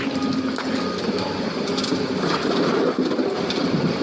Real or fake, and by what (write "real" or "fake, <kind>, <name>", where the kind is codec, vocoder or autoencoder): real